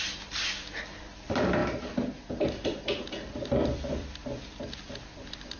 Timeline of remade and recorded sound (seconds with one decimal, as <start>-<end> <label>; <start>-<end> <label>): 0.0-1.6 remade; 1.6-2.5 recorded; 2.5-5.6 remade